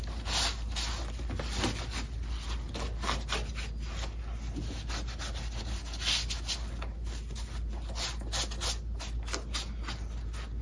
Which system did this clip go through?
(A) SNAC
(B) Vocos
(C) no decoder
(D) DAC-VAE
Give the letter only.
C